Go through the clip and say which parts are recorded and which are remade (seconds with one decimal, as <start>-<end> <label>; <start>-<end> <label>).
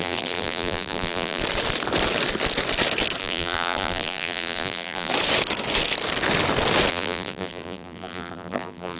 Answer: 0.0-1.4 remade; 1.4-3.2 recorded; 3.2-5.1 remade; 5.1-6.9 recorded; 6.9-9.0 remade